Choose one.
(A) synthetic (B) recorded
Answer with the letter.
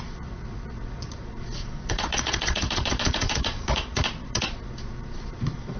A